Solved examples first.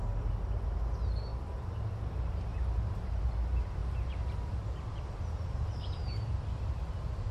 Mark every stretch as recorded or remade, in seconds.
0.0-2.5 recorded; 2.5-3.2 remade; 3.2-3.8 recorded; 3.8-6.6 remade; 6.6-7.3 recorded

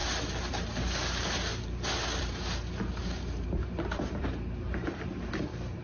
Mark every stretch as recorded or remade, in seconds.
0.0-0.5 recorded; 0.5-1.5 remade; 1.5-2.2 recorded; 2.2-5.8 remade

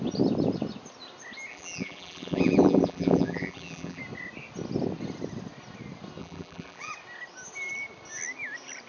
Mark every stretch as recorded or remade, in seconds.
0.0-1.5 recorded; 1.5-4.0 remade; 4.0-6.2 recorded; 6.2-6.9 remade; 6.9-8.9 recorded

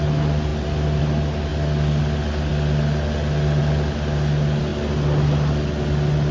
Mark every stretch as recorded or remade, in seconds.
0.0-0.5 recorded; 0.5-1.0 remade; 1.0-6.3 recorded

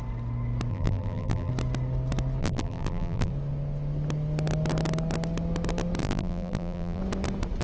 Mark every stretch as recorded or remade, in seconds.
0.0-0.7 recorded; 0.7-1.5 remade; 1.5-2.4 recorded; 2.4-3.3 remade; 3.3-6.0 recorded; 6.0-7.0 remade; 7.0-7.6 recorded

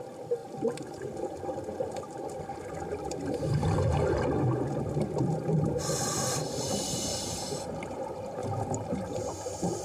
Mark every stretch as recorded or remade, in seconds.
0.0-9.8 remade